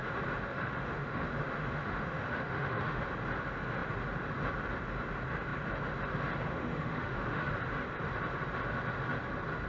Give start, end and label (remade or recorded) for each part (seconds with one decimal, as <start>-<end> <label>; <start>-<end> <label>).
0.0-0.5 recorded; 0.5-3.0 remade; 3.0-6.5 recorded; 6.5-7.5 remade; 7.5-9.7 recorded